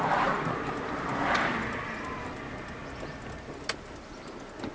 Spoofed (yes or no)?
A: no